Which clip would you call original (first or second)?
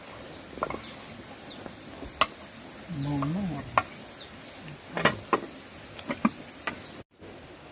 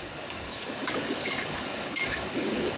first